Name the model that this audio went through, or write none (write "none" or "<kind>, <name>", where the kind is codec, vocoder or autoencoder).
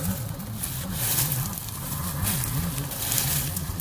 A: none